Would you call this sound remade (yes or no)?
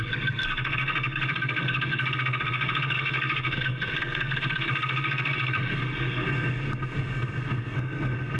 yes